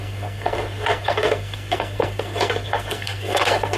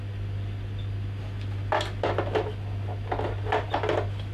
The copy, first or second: first